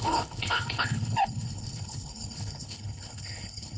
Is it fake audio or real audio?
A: fake